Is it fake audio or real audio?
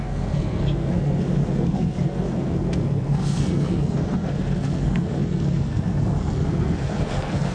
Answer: fake